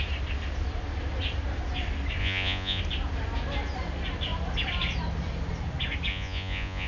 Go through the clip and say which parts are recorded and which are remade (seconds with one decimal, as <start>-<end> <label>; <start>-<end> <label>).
0.0-2.2 recorded; 2.2-2.8 remade; 2.8-6.1 recorded; 6.1-6.9 remade